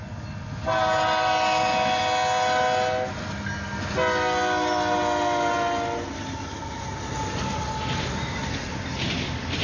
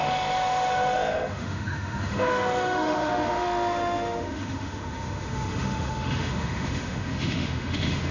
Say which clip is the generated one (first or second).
second